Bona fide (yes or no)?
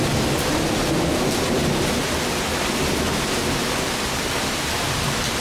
yes